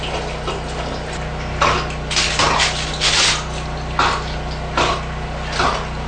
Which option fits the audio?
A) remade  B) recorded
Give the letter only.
B